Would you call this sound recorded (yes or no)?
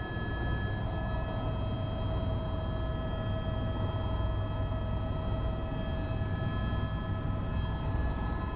yes